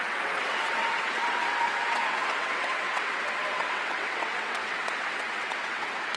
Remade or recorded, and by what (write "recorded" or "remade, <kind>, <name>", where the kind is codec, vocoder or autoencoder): remade, vocoder, WaveNeXt